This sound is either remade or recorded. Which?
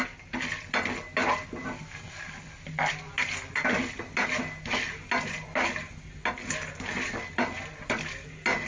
recorded